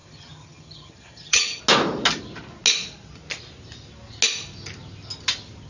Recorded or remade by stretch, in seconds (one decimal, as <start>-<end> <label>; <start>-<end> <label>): 0.0-1.6 remade; 1.6-5.7 recorded